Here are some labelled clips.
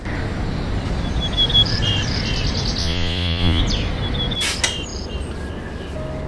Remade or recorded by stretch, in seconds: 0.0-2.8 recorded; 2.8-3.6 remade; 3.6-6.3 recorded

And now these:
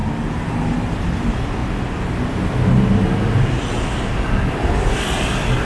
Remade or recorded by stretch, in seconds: 0.0-5.6 recorded

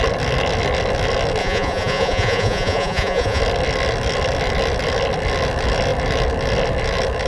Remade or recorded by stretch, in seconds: 0.0-1.4 recorded; 1.4-3.4 remade; 3.4-7.3 recorded

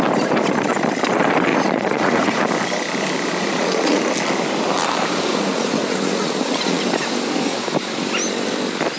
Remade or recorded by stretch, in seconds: 0.0-1.5 recorded; 1.5-2.4 remade; 2.4-3.4 recorded; 3.4-4.0 remade; 4.0-5.3 recorded; 5.3-6.8 remade; 6.8-9.0 recorded

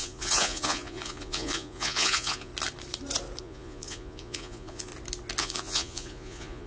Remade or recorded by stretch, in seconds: 0.0-2.5 remade; 2.5-3.4 recorded; 3.4-4.9 remade; 4.9-5.4 recorded; 5.4-6.7 remade

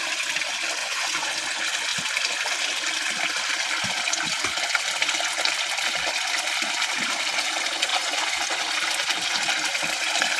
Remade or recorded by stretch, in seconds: 0.0-0.8 recorded; 0.8-1.3 remade; 1.3-7.9 recorded; 7.9-8.4 remade; 8.4-10.4 recorded